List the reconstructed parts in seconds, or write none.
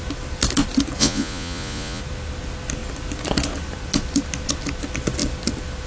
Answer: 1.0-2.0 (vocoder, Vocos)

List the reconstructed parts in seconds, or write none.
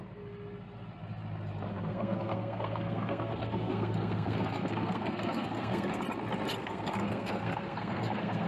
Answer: 1.7-6.0 (codec, SNAC); 6.6-8.5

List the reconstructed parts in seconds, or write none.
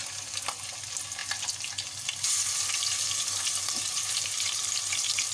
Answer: none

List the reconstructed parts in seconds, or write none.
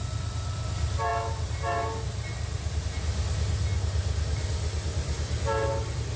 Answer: none